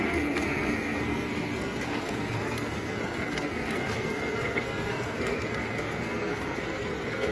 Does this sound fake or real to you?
fake